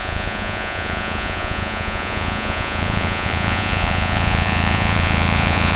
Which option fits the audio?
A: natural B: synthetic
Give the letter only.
B